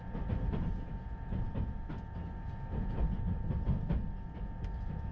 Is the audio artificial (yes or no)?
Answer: no